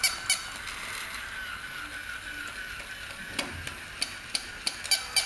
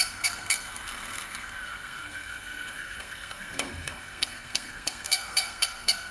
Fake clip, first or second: second